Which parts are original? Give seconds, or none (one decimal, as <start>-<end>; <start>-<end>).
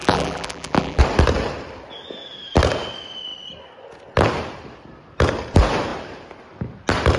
1.0-7.2